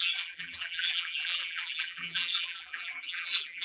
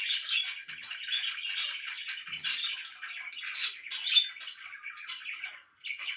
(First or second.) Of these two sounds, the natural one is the second